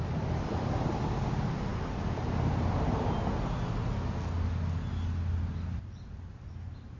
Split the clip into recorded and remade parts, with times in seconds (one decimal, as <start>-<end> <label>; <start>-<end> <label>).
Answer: 0.0-7.0 recorded